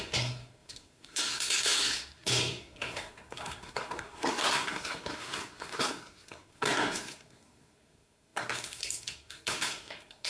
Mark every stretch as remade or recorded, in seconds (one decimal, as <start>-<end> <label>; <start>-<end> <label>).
0.0-10.3 remade